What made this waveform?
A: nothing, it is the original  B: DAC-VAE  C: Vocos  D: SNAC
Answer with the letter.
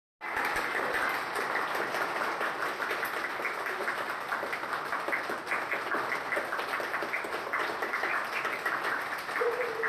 A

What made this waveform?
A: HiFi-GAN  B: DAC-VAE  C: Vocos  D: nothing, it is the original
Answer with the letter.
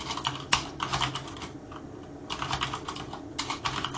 D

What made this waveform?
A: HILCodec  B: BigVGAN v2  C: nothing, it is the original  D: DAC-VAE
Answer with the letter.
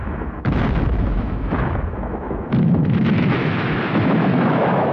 D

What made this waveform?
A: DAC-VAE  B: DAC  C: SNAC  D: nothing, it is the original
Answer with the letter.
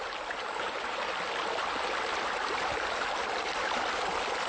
D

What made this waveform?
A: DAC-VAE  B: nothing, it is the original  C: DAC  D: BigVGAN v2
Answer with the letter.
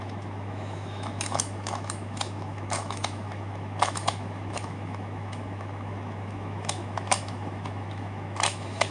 A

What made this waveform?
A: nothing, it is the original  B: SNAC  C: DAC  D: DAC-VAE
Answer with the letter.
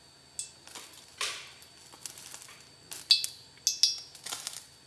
A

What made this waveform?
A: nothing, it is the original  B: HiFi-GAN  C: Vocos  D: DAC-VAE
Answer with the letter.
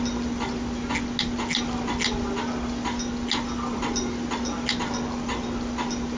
A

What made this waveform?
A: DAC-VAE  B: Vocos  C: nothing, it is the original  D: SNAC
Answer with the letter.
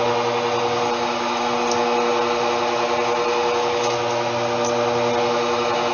C